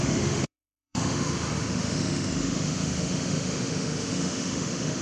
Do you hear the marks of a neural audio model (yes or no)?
yes